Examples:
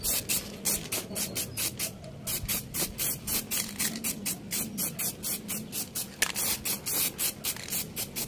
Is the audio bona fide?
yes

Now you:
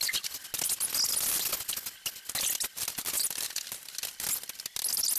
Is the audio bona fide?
yes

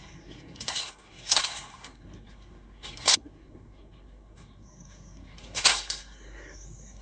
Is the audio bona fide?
no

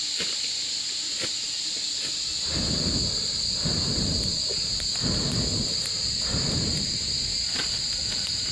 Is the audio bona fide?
yes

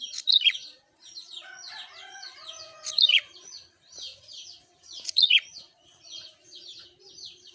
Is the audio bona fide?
no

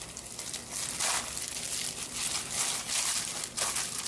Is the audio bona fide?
yes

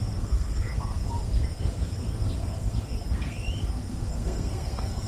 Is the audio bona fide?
no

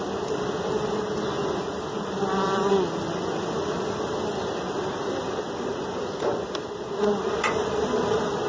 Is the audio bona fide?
yes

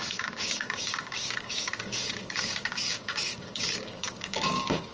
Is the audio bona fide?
no